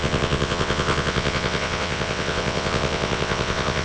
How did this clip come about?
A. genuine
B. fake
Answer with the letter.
B